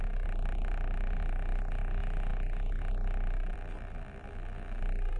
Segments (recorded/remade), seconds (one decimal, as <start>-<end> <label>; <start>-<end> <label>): 0.0-5.2 recorded